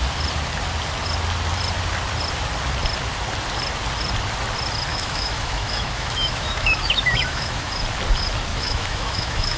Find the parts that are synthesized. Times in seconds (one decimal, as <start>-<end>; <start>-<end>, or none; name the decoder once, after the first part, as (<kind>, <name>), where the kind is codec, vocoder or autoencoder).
4.9-7.7 (autoencoder, DAC-VAE); 8.5-9.6